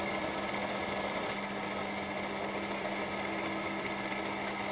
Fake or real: real